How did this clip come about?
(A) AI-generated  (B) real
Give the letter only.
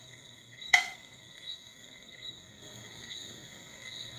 A